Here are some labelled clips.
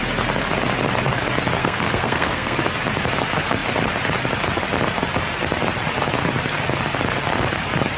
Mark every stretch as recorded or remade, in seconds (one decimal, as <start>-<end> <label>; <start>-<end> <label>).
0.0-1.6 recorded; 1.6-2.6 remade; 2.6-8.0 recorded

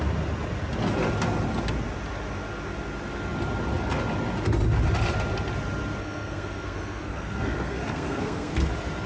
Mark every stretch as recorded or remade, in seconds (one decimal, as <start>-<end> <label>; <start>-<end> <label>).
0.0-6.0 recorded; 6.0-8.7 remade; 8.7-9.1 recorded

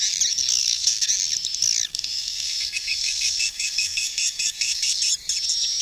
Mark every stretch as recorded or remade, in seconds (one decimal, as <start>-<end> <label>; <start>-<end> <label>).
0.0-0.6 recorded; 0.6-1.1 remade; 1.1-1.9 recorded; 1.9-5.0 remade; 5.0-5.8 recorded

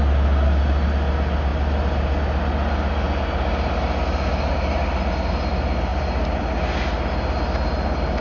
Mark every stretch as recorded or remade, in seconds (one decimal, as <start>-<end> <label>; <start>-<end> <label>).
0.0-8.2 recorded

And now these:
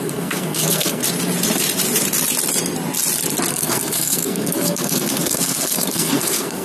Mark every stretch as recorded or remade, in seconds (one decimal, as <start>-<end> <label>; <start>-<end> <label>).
0.0-1.0 remade; 1.0-3.5 recorded; 3.5-6.6 remade

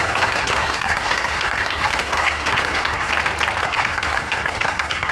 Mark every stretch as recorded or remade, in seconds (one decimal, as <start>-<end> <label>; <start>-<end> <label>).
0.0-3.1 remade; 3.1-3.6 recorded; 3.6-5.1 remade

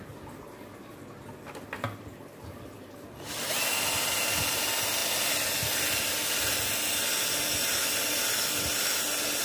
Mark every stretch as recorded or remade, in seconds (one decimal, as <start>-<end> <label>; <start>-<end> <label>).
0.0-9.4 recorded

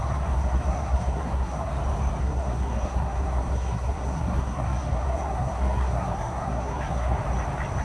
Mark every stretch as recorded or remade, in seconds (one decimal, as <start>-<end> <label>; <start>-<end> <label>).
0.0-1.7 remade; 1.7-2.2 recorded; 2.2-7.2 remade; 7.2-7.8 recorded